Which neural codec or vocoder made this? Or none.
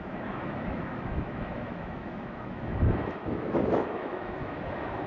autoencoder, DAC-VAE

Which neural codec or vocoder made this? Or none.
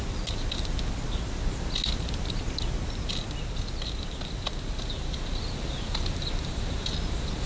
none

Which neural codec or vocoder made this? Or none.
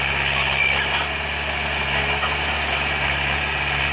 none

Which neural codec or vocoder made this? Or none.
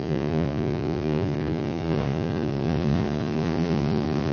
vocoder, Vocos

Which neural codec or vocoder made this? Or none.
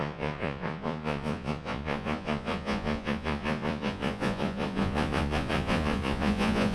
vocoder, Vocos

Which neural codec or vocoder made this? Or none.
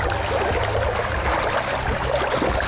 none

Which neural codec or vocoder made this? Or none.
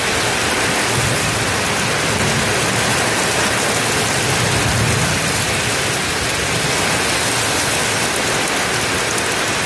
none